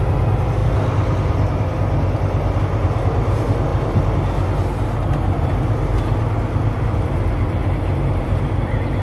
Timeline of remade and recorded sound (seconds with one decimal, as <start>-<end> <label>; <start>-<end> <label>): 0.0-9.0 recorded